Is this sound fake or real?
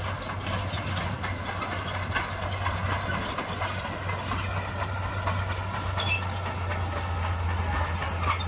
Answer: real